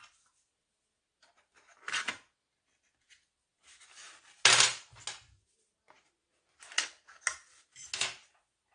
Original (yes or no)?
yes